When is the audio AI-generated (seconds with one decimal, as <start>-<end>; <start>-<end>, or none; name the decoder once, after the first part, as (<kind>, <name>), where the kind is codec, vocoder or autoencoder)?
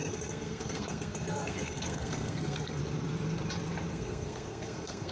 0.0-2.8 (codec, SNAC); 3.9-5.1